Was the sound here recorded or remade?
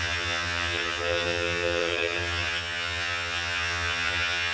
remade